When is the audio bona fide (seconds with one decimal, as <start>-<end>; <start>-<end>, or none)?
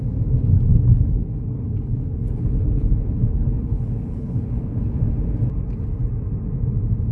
0.0-0.7; 5.0-7.1